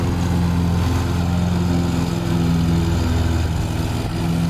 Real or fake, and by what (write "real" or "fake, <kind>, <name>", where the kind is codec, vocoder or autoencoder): real